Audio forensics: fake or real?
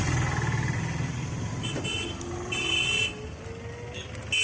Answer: real